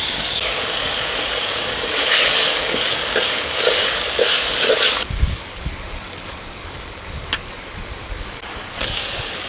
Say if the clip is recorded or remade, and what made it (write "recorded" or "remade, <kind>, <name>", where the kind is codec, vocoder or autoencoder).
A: remade, codec, DAC